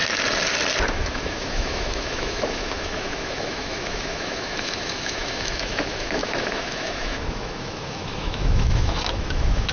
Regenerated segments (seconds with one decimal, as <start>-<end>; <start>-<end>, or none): 0.9-9.7